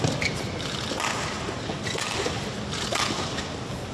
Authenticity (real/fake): real